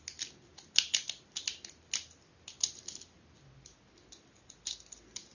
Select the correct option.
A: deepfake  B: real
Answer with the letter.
B